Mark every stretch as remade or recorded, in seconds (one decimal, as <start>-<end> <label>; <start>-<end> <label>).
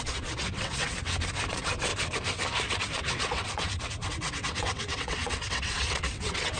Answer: 0.0-0.9 remade; 0.9-1.5 recorded; 1.5-1.9 remade; 1.9-2.8 recorded; 2.8-6.6 remade